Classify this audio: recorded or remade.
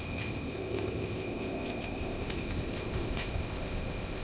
remade